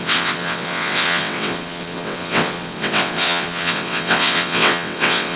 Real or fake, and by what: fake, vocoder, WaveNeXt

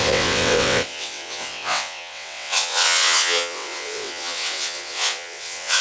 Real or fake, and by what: fake, vocoder, WaveNeXt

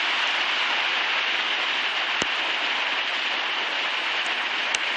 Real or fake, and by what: real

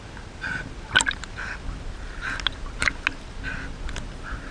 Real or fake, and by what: real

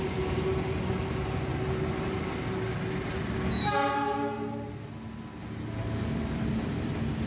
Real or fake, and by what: real